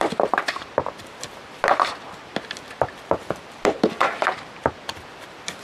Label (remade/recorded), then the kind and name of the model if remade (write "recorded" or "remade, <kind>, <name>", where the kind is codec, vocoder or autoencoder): remade, vocoder, BigVGAN v2